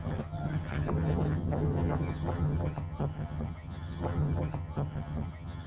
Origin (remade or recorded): remade